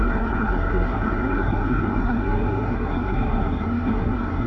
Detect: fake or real fake